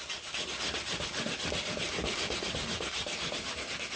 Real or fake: real